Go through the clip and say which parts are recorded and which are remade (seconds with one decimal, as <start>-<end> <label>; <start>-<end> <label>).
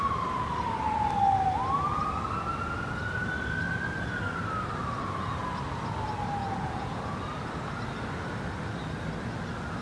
0.0-6.4 recorded; 6.4-7.0 remade; 7.0-9.8 recorded